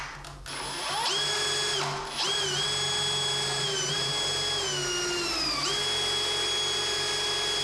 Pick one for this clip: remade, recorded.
recorded